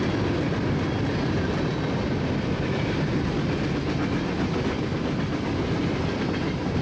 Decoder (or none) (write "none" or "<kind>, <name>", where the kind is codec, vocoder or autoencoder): none